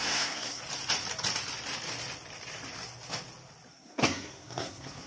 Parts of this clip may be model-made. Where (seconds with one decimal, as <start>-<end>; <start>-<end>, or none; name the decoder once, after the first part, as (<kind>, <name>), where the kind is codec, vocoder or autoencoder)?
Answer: 0.0-0.6 (codec, SNAC); 3.7-5.1